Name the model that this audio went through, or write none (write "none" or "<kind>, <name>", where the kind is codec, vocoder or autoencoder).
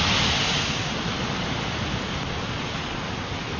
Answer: none